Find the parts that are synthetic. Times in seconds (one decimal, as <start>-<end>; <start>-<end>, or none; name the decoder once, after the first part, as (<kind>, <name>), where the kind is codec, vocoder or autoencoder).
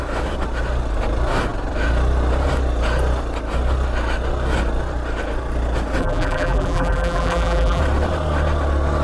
6.0-7.8 (vocoder, BigVGAN v2)